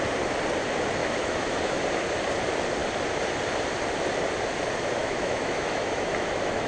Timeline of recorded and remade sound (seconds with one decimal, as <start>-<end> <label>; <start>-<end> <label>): 0.0-1.0 recorded; 1.0-1.8 remade; 1.8-5.0 recorded; 5.0-6.7 remade